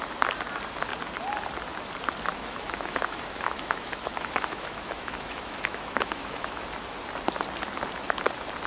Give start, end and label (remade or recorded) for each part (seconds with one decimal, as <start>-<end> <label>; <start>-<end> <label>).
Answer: 0.0-2.3 recorded; 2.3-6.6 remade; 6.6-8.7 recorded